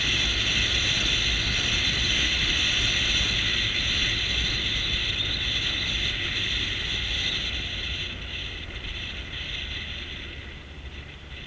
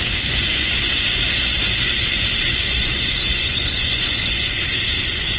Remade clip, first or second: second